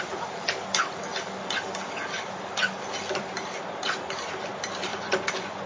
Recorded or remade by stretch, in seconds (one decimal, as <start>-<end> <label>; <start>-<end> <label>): 0.0-4.9 recorded; 4.9-5.7 remade